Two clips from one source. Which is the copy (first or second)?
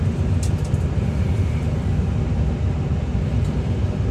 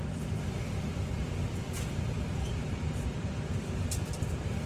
second